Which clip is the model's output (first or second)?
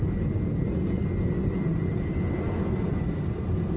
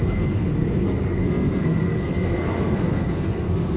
second